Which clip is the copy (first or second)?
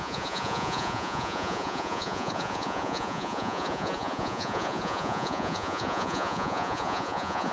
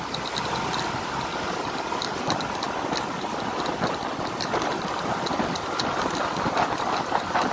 first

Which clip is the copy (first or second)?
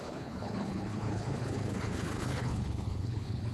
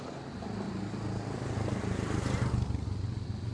first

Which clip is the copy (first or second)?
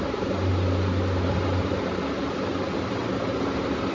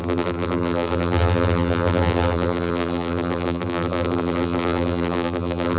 second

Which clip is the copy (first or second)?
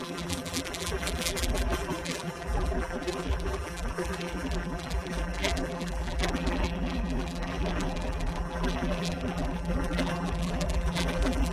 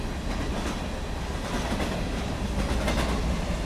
first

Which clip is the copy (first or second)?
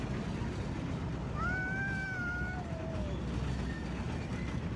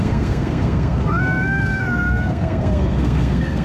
second